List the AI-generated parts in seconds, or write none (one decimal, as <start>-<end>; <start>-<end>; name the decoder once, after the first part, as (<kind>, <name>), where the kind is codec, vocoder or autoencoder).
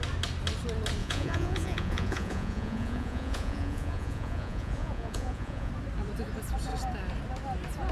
1.0-5.7 (vocoder, Vocos)